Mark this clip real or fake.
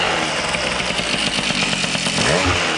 real